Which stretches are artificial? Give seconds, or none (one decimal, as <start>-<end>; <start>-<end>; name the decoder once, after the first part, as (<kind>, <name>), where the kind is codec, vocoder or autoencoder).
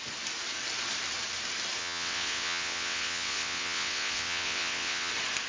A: 1.8-5.1 (vocoder, WaveNeXt)